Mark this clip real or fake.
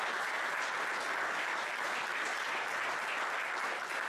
real